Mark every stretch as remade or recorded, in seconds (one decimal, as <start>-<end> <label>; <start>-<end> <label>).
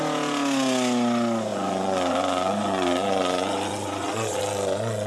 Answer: 0.0-1.5 recorded; 1.5-4.4 remade; 4.4-5.1 recorded